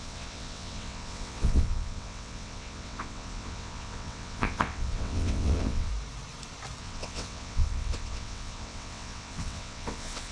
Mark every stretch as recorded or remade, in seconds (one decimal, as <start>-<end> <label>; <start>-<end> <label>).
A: 0.0-5.9 remade; 5.9-6.8 recorded; 6.8-10.3 remade